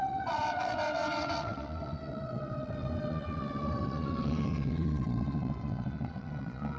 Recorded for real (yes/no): no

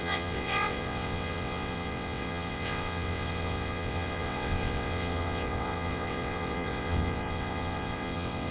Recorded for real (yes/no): no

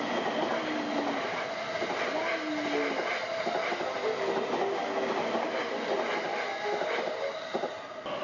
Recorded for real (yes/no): yes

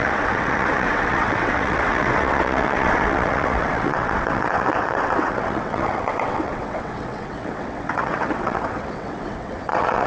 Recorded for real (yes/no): no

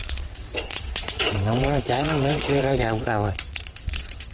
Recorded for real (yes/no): no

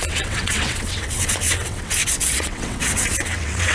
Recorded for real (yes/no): no